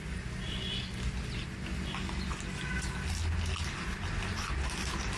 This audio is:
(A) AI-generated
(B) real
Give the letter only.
B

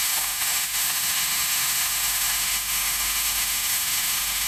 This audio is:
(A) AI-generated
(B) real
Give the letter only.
A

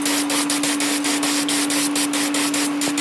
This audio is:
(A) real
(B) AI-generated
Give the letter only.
A